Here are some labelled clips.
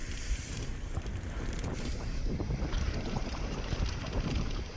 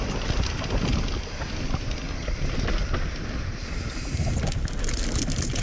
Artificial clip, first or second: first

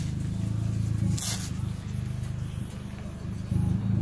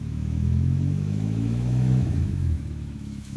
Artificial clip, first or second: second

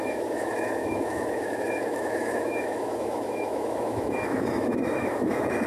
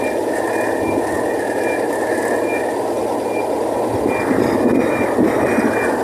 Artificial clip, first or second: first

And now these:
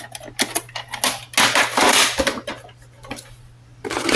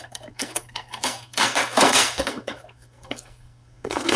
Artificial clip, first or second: second